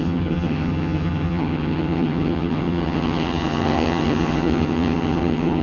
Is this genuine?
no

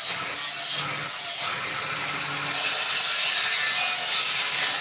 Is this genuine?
yes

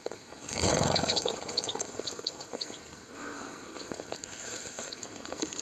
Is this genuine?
no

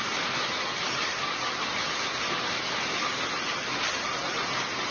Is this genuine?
yes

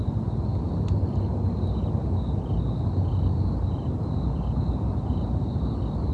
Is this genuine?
yes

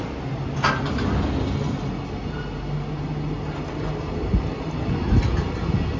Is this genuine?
yes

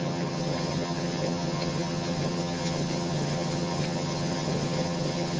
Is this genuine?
no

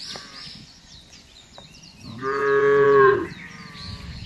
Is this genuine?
no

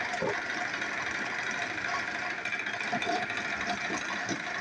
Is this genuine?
yes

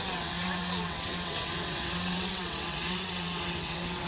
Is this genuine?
no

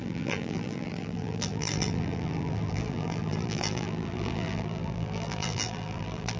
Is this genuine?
no